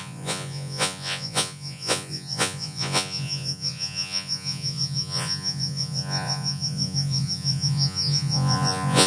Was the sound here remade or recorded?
remade